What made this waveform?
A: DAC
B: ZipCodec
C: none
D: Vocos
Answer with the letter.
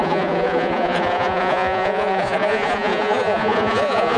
D